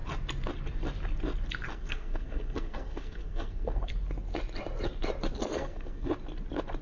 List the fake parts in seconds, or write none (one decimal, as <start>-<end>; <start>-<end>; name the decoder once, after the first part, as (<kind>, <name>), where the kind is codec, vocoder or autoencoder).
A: 1.7-3.9 (codec, SNAC); 5.5-6.1

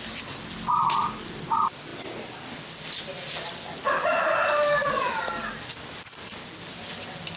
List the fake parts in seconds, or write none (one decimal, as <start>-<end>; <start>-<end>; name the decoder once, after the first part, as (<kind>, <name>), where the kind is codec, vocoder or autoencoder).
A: none

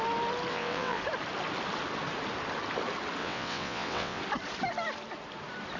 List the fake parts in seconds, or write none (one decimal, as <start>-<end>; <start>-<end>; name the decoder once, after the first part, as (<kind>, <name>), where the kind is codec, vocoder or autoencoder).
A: 0.5-1.0 (vocoder, WaveNeXt); 3.2-4.2